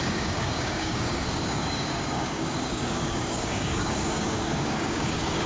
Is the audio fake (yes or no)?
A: yes